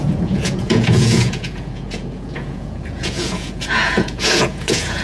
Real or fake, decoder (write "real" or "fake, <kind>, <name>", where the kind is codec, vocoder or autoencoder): fake, vocoder, Vocos